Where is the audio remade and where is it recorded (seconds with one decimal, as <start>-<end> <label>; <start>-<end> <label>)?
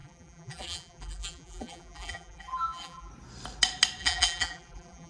0.0-3.1 remade; 3.1-4.0 recorded; 4.0-5.1 remade